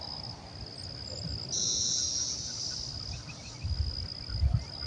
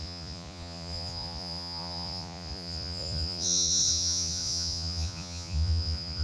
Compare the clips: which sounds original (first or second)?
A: first